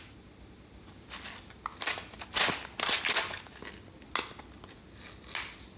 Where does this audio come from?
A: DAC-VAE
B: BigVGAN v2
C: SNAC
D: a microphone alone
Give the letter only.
D